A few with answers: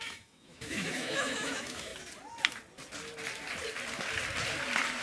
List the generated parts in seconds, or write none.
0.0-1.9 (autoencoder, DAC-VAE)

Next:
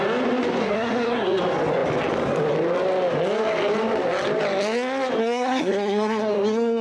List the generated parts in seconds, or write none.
0.6-1.4 (codec, SNAC); 5.2-6.8

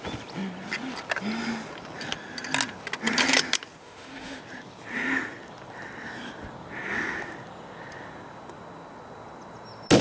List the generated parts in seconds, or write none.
3.8-4.4 (autoencoder, DAC-VAE)